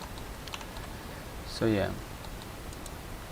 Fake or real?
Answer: real